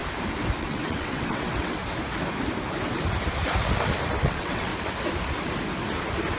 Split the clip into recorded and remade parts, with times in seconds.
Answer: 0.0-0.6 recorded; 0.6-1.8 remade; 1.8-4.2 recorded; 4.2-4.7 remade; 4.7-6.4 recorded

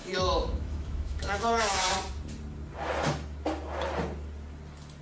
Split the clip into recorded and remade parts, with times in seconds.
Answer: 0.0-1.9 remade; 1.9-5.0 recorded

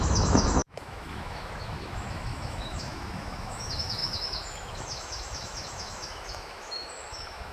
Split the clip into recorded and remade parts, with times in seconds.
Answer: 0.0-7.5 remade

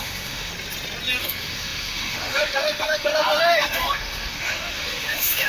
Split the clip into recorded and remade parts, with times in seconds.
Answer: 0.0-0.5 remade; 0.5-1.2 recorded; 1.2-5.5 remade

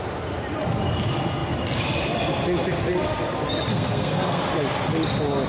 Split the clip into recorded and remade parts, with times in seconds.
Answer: 0.0-3.7 recorded; 3.7-4.4 remade; 4.4-5.5 recorded

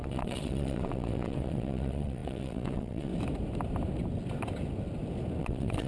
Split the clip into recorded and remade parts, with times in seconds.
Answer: 0.0-3.1 remade; 3.1-5.4 recorded; 5.4-5.9 remade